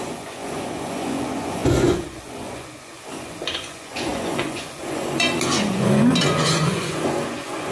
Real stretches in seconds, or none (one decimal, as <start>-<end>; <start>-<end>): none

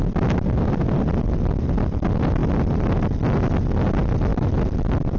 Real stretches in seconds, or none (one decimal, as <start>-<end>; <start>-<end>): 0.0-5.2

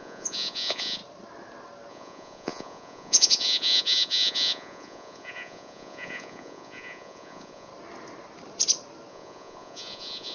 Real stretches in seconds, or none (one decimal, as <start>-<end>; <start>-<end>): 1.0-1.9; 7.7-9.1

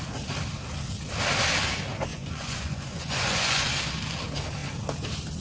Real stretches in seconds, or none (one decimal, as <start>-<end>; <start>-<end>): 0.0-2.1; 3.7-5.4